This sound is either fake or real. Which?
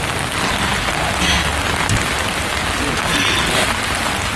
real